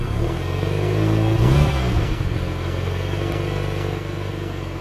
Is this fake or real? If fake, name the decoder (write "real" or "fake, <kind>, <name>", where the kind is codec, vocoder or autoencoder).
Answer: fake, codec, SNAC